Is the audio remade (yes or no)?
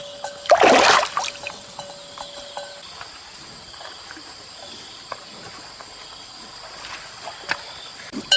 no